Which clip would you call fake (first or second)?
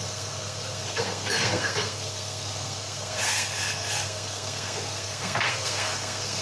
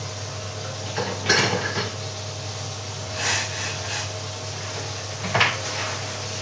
first